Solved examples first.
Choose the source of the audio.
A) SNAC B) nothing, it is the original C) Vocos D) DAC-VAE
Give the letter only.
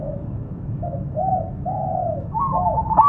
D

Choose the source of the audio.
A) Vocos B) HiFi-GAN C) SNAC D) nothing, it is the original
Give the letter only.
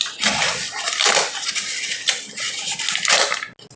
D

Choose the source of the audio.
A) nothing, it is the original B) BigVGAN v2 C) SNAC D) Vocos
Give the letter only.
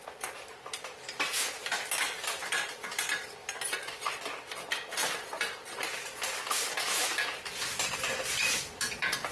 A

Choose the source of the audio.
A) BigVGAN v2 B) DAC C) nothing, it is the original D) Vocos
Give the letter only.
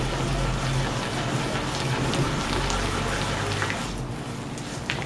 C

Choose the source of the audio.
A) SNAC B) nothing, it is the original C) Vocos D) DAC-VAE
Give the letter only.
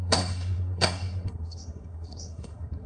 A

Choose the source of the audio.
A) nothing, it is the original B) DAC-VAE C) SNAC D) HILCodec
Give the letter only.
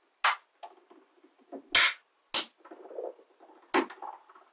A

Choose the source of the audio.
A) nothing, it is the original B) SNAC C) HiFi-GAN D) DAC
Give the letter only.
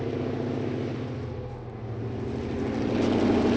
A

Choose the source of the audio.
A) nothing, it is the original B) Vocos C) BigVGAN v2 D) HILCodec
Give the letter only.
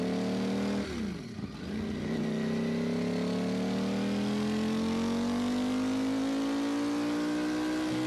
A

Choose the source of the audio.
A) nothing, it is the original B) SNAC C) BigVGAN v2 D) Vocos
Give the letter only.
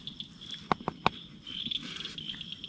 A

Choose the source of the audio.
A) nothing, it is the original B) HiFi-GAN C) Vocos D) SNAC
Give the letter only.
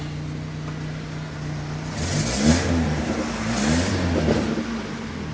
A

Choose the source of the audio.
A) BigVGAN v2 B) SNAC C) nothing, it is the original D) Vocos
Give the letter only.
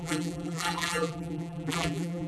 A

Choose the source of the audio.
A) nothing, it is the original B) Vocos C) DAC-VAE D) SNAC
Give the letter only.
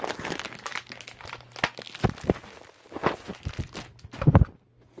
A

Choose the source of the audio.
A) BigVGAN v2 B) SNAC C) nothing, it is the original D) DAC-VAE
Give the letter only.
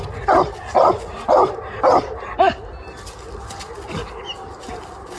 C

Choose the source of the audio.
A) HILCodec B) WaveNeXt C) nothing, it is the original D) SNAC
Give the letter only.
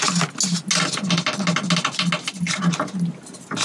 C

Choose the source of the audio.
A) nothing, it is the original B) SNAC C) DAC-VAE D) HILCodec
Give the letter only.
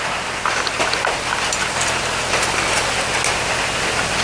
A